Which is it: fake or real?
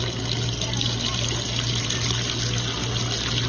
real